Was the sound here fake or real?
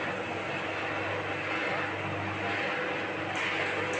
real